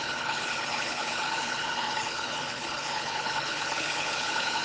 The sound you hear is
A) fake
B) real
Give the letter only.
A